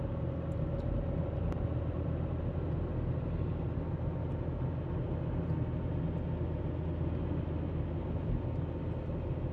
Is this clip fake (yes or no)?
no